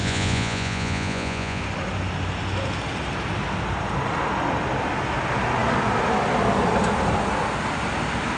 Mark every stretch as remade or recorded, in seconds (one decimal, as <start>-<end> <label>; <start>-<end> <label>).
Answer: 0.0-1.6 remade; 1.6-8.4 recorded